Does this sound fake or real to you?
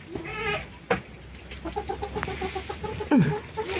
real